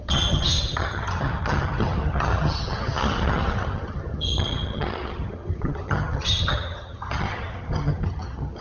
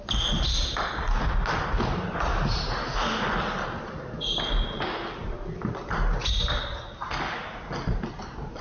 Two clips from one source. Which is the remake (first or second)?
first